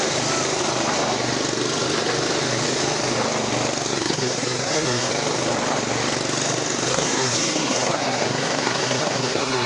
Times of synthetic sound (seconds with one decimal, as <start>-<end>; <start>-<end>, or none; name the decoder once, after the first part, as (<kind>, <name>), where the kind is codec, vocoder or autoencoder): 3.9-5.1 (codec, SNAC); 6.9-9.7

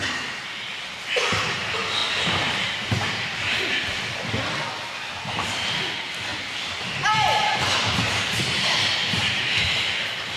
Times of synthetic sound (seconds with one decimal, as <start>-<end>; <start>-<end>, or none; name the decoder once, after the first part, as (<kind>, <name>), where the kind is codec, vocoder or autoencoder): 2.0-3.6 (vocoder, BigVGAN v2); 6.3-8.4; 9.0-10.4

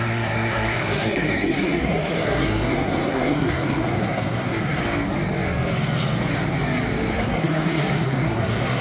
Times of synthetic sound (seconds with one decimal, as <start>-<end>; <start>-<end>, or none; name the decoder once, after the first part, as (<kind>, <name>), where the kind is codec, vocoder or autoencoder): 0.0-4.8 (codec, SNAC); 7.1-8.8